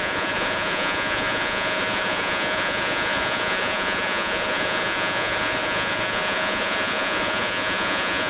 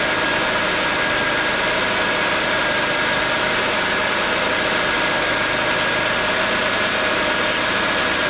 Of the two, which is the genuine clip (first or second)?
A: second